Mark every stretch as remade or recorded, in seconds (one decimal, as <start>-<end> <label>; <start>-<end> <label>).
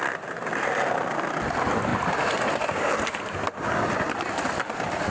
0.0-5.1 recorded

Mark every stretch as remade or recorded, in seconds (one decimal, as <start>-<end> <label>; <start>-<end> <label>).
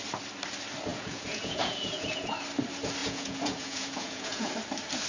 0.0-0.9 recorded; 0.9-2.3 remade; 2.3-3.0 recorded; 3.0-4.5 remade; 4.5-5.1 recorded